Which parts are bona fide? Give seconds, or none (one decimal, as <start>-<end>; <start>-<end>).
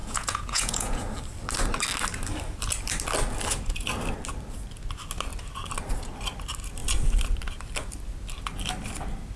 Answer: 1.0-9.4